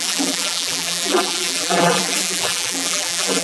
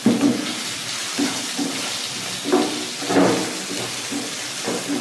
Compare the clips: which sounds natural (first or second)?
second